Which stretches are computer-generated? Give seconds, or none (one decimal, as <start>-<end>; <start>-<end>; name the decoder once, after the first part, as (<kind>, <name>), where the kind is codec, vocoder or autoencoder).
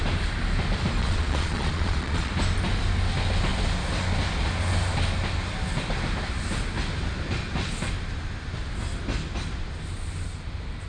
1.0-2.3 (vocoder, Vocos)